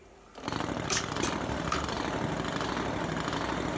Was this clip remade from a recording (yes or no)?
no